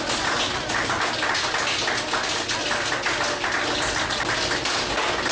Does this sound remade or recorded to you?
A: recorded